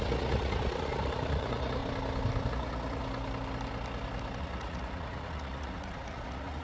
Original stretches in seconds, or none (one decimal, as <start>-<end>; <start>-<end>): 1.8-2.5; 3.0-4.4